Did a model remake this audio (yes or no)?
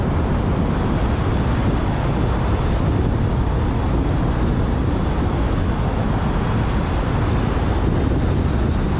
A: no